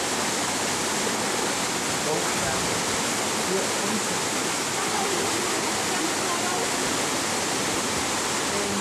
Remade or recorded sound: recorded